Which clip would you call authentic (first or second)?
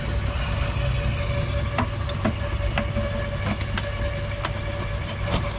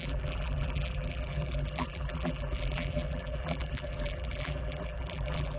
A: first